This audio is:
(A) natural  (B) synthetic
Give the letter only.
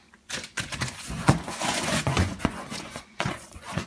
B